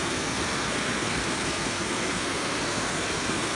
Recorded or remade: remade